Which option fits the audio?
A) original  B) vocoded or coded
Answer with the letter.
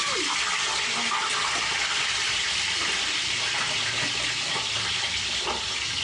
A